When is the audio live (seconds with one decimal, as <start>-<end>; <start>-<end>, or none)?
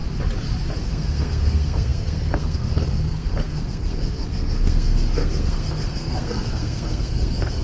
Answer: 0.0-0.8